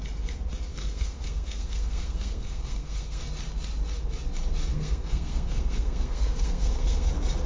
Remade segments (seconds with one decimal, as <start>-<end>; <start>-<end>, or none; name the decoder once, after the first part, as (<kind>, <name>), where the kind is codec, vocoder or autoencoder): 0.7-3.2 (codec, SNAC); 4.7-7.1